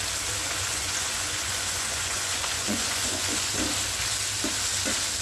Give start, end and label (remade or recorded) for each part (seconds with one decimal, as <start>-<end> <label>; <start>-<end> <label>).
0.0-0.4 recorded; 0.4-3.5 remade; 3.5-5.2 recorded